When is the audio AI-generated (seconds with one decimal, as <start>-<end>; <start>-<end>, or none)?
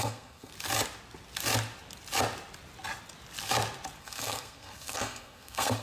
0.0-0.5; 4.0-5.8